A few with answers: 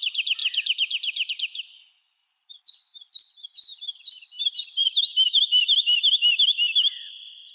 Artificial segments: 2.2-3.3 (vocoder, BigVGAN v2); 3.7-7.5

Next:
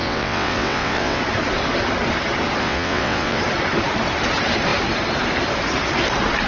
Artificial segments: 0.0-1.2 (vocoder, WaveNeXt); 2.6-3.4

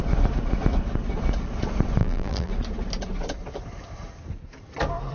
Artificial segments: 2.0-2.5 (vocoder, BigVGAN v2)

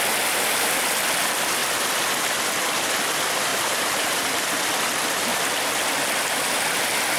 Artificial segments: 3.5-4.6 (vocoder, BigVGAN v2)

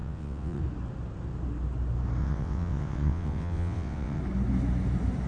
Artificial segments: 0.0-0.6 (vocoder, WaveNeXt); 2.2-4.2

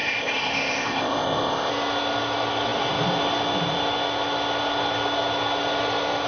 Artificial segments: 0.0-1.7 (codec, ZipCodec)

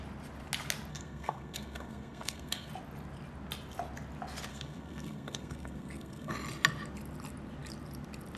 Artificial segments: 0.9-2.7 (codec, SNAC); 4.5-6.3

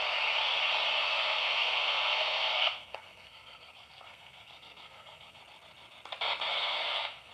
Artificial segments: 1.0-5.4 (codec, SNAC); 6.5-7.3